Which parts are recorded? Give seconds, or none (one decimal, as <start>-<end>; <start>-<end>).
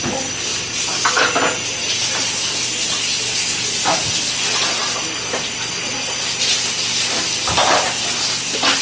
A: 0.0-8.8